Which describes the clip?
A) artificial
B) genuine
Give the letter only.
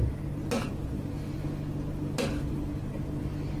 B